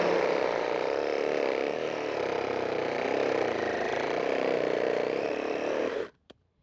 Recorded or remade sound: remade